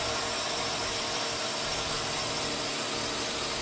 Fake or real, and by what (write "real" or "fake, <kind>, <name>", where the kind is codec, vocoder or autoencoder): real